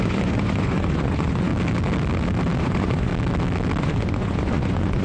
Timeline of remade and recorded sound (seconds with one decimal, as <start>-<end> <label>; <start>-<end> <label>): 0.0-1.5 remade; 1.5-2.6 recorded; 2.6-3.1 remade; 3.1-3.8 recorded; 3.8-5.0 remade